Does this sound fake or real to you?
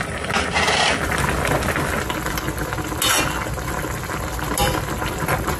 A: real